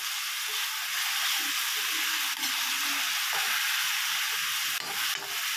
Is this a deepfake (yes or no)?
no